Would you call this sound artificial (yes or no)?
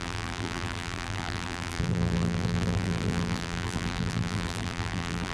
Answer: yes